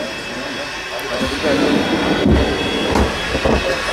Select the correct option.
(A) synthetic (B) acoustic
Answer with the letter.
B